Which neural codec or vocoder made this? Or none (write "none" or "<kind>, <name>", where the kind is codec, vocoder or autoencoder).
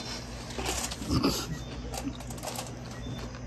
none